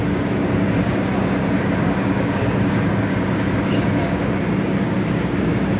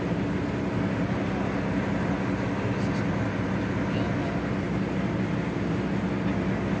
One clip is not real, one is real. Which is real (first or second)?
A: second